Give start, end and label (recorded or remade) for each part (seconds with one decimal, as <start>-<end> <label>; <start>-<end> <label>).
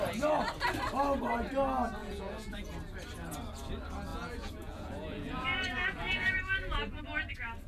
0.0-2.0 recorded; 2.0-2.7 remade; 2.7-4.1 recorded; 4.1-7.0 remade; 7.0-7.7 recorded